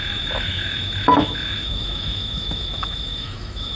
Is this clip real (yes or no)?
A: no